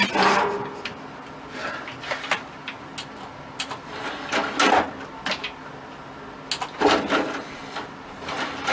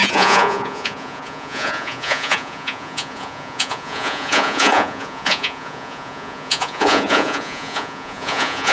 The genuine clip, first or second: first